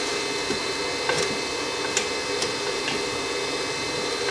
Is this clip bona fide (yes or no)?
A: yes